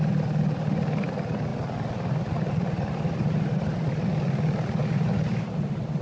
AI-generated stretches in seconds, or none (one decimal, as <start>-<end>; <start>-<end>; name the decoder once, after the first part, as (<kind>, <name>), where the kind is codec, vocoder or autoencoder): none